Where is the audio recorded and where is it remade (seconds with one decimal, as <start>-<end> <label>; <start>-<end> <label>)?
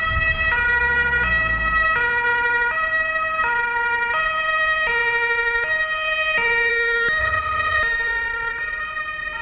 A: 0.0-7.2 recorded; 7.2-7.8 remade; 7.8-9.4 recorded